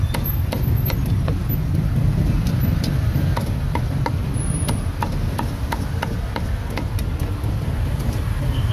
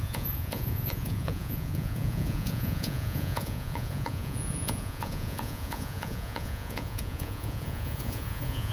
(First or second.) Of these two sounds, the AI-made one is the second